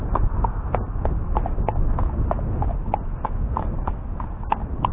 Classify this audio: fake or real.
real